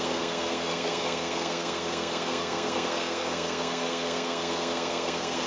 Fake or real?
fake